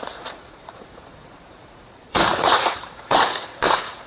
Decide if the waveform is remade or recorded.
remade